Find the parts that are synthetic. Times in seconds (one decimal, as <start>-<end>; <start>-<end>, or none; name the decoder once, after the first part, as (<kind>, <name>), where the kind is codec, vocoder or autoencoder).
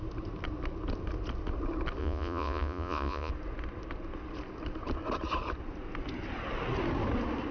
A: 2.0-3.3 (vocoder, Vocos)